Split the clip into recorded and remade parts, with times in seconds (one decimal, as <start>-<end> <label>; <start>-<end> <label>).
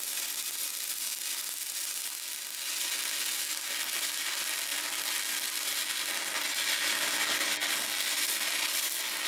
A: 0.0-9.3 recorded